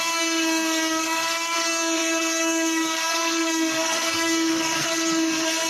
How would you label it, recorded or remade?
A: remade